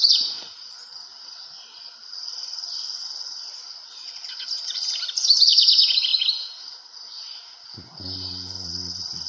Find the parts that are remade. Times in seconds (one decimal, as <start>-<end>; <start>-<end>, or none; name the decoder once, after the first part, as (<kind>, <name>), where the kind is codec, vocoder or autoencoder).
none